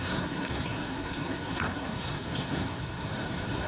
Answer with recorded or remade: remade